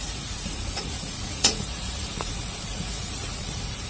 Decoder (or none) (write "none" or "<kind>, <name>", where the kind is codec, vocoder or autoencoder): vocoder, Vocos